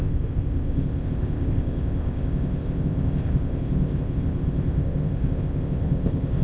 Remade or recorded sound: remade